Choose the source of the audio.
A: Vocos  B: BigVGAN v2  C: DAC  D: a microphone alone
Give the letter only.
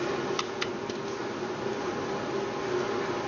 D